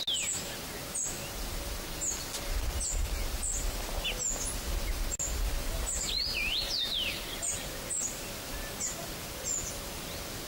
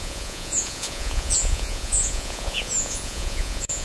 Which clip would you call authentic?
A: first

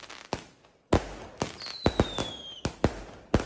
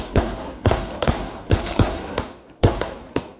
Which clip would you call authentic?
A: first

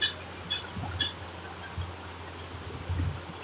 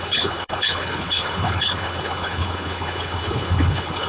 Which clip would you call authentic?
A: first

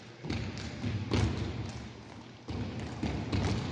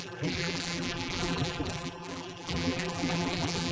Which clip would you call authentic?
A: first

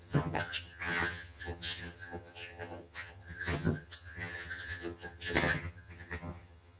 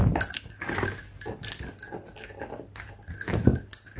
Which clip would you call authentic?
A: second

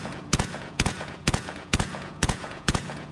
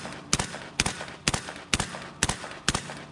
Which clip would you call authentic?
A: second